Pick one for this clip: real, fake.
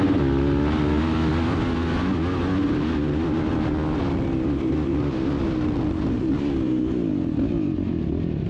real